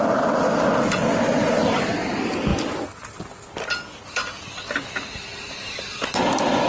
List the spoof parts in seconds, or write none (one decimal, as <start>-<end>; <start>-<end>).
none